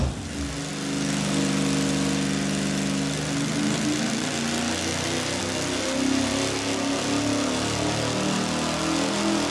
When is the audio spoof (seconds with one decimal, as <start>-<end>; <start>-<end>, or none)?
none